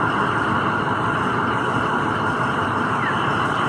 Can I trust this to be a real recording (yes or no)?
yes